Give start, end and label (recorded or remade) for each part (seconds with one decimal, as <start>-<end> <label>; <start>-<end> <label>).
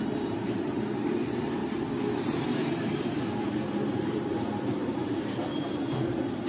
0.0-1.6 remade; 1.6-2.2 recorded; 2.2-6.5 remade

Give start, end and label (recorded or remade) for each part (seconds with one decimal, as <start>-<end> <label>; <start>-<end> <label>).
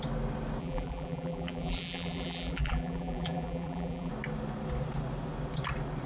0.0-0.6 recorded; 0.6-4.1 remade; 4.1-6.1 recorded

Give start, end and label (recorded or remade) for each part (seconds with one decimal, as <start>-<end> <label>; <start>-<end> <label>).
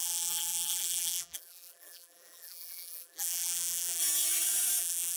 0.0-4.0 remade; 4.0-4.8 recorded; 4.8-5.2 remade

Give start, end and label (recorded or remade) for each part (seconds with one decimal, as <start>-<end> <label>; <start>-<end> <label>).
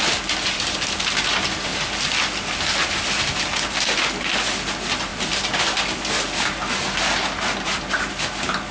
0.0-1.7 recorded; 1.7-3.4 remade; 3.4-8.7 recorded